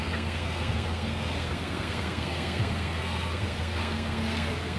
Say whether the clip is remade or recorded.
remade